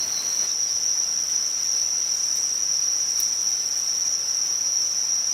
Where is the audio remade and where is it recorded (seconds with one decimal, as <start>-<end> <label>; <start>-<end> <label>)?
0.0-5.3 recorded